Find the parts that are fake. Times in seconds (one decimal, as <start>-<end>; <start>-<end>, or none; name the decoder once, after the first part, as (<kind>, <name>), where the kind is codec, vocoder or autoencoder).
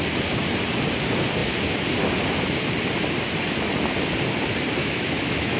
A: 4.8-5.6 (autoencoder, DAC-VAE)